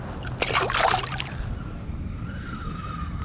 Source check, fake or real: real